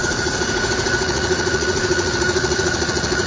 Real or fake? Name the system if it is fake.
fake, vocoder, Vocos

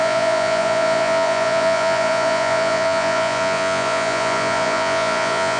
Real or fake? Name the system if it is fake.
fake, vocoder, Vocos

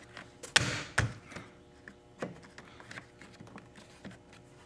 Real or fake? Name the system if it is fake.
real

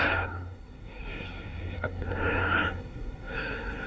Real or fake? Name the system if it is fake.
fake, codec, SNAC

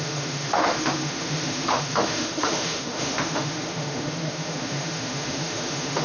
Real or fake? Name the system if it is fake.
fake, autoencoder, DAC-VAE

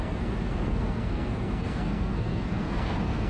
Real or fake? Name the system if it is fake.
fake, codec, SNAC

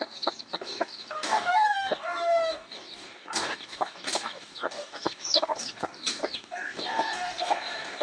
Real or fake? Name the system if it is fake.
fake, codec, DAC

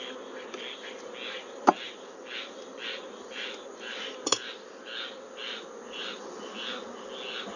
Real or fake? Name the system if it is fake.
real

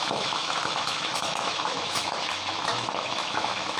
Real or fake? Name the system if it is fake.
fake, autoencoder, DAC-VAE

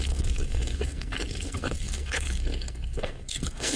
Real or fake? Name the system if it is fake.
fake, codec, SNAC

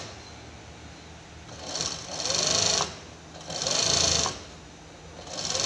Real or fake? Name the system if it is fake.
real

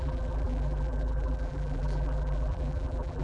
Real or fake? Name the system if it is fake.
fake, vocoder, BigVGAN v2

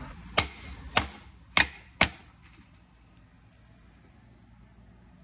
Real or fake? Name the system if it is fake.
real